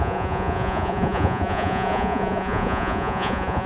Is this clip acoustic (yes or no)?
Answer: no